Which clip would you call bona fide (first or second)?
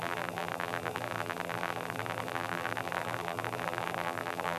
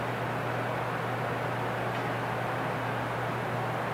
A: second